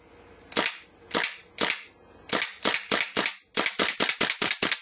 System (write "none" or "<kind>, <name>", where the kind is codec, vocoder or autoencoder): none